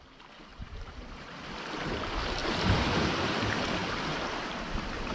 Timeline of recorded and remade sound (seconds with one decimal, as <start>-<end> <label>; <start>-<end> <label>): 0.0-0.5 recorded; 0.5-1.5 remade; 1.5-2.4 recorded; 2.4-3.0 remade; 3.0-5.1 recorded